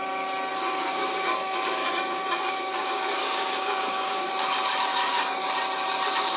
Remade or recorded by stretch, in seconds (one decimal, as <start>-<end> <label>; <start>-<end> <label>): 0.0-0.5 recorded; 0.5-4.3 remade; 4.3-4.9 recorded; 4.9-5.5 remade; 5.5-6.4 recorded